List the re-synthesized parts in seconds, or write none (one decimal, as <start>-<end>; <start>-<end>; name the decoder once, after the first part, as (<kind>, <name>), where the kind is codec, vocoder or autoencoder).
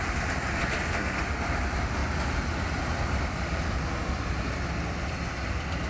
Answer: 0.6-1.2 (codec, SNAC)